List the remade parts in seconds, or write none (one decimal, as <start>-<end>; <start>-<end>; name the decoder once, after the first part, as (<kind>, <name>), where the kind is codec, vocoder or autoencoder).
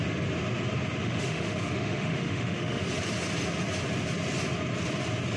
1.0-2.8 (autoencoder, DAC-VAE)